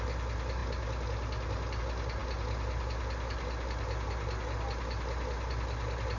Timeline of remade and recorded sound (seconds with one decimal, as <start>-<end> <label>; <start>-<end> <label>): 0.0-6.2 recorded